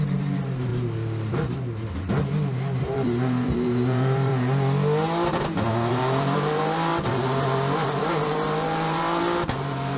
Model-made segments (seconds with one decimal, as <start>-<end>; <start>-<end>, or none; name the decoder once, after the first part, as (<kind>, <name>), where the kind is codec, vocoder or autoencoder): 0.0-0.7 (vocoder, BigVGAN v2); 2.8-4.3; 5.9-6.9; 8.0-10.0